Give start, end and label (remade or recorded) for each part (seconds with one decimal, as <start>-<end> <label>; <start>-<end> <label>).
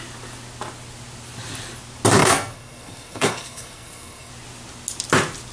0.0-2.2 recorded; 2.2-4.3 remade; 4.3-5.5 recorded